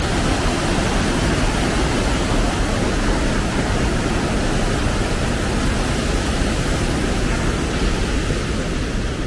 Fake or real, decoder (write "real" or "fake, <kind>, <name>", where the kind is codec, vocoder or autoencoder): real